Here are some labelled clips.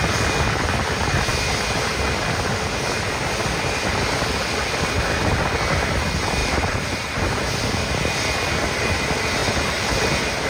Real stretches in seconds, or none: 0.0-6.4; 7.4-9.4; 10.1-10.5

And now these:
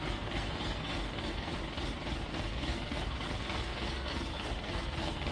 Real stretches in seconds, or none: 1.5-2.3

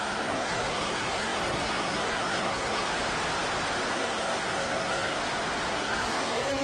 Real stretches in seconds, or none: 2.9-3.9; 5.2-5.7

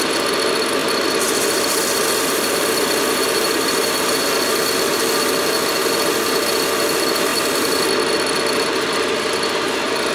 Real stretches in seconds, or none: 0.0-7.3; 7.9-10.1

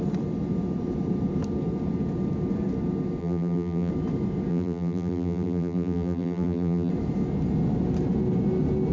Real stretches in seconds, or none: 0.0-3.2; 3.9-4.5; 6.9-8.9

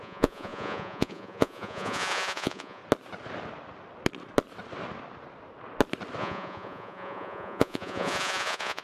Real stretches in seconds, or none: 2.8-6.2

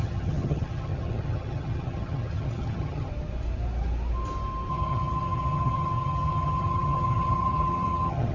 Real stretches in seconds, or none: 3.1-4.7